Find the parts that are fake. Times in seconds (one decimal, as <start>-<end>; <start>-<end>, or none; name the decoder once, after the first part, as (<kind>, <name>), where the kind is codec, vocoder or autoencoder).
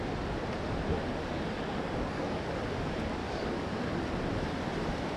1.1-2.5 (codec, DAC); 3.2-3.7